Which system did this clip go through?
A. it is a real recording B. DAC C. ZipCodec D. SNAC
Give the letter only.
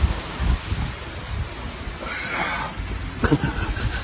A